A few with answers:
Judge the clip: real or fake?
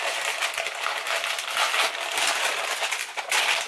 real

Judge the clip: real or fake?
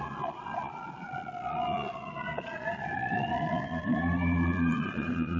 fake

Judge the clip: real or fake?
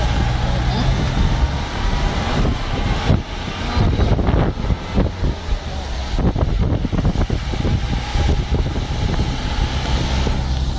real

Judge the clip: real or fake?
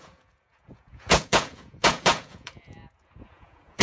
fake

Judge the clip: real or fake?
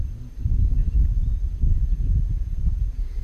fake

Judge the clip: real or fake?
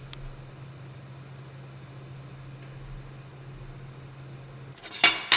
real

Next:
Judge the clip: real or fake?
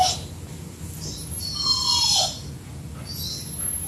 real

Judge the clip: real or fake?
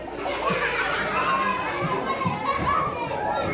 real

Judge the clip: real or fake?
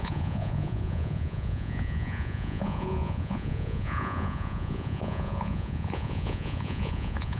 fake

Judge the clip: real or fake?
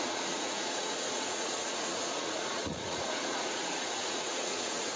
fake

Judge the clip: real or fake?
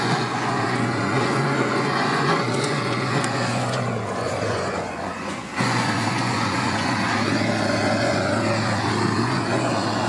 fake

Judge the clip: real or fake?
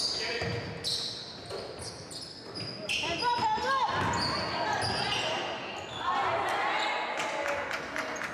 real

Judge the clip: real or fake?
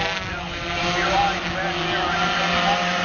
real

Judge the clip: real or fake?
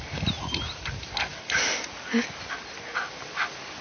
real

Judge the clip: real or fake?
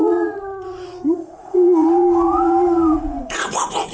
fake